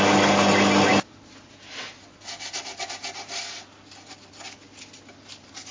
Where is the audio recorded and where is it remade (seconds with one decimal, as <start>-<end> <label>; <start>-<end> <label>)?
0.0-5.7 recorded